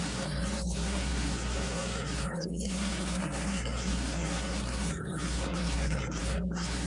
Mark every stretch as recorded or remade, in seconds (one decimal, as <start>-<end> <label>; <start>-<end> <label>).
0.0-6.9 remade